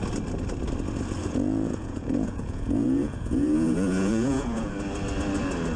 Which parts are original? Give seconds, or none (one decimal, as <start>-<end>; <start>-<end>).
0.0-1.2; 4.7-5.8